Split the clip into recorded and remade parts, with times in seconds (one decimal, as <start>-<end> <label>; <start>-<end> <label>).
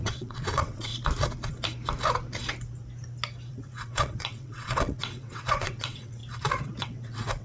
0.0-0.9 remade; 0.9-3.5 recorded; 3.5-6.2 remade; 6.2-6.8 recorded; 6.8-7.4 remade